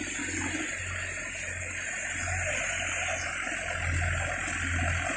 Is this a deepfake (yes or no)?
no